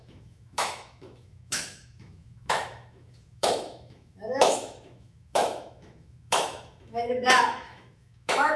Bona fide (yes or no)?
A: no